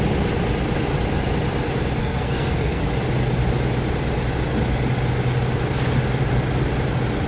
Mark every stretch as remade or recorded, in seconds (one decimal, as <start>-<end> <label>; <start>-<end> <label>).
0.0-2.0 recorded; 2.0-2.9 remade; 2.9-7.3 recorded